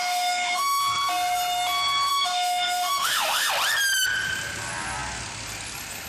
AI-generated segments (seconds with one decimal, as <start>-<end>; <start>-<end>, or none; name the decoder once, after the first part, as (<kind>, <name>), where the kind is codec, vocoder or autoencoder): 0.0-0.8 (autoencoder, DAC-VAE); 2.1-3.5

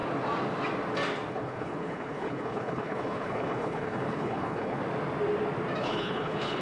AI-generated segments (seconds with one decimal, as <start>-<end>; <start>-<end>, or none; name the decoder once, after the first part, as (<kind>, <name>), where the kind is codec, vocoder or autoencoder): 1.3-4.8 (codec, HILCodec); 5.8-6.6

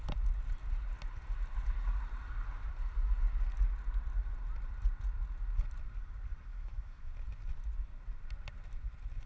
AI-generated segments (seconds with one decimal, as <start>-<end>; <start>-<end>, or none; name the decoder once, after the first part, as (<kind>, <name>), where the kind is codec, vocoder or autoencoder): 6.5-7.1 (autoencoder, DAC-VAE)

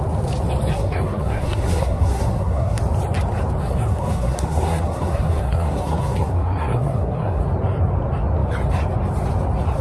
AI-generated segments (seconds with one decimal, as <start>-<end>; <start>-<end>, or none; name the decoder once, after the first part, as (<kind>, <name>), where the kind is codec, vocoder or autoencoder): 0.7-2.8 (codec, SNAC); 3.6-7.4

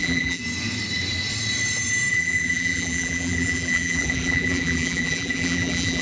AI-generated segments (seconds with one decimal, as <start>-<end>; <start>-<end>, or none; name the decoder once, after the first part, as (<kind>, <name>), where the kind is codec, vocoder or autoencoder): 0.0-0.4 (vocoder, BigVGAN v2); 2.1-6.0